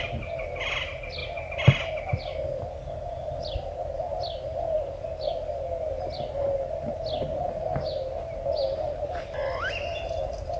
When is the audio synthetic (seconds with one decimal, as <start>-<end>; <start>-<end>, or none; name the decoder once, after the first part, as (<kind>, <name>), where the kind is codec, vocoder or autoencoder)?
none